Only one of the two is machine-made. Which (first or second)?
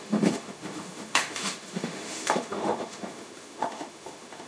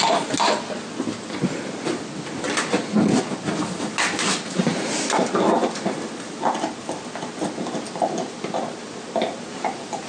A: first